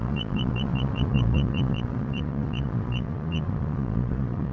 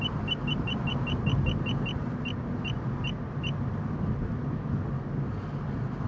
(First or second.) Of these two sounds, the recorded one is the second